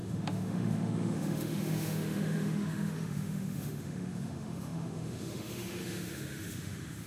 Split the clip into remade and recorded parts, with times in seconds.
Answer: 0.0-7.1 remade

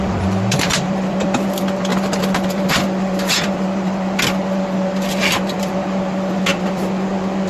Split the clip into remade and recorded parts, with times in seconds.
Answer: 0.0-7.5 recorded

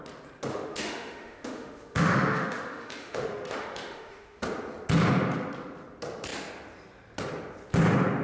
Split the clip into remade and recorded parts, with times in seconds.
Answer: 0.0-0.5 recorded; 0.5-4.4 remade; 4.4-8.2 recorded

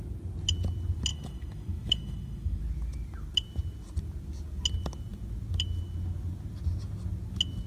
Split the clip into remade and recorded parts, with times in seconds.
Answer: 0.0-1.1 recorded; 1.1-2.6 remade; 2.6-7.7 recorded

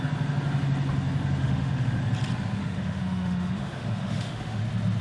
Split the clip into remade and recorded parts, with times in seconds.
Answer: 0.0-1.4 recorded; 1.4-2.0 remade; 2.0-2.6 recorded; 2.6-4.6 remade; 4.6-5.0 recorded

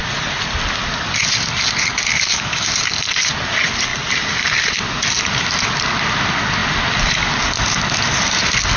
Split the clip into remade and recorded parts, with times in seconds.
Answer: 0.0-2.3 recorded; 2.3-2.9 remade; 2.9-8.8 recorded

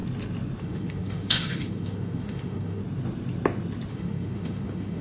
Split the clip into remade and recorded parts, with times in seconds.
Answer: 0.0-0.6 recorded; 0.6-2.8 remade; 2.8-3.9 recorded; 3.9-5.0 remade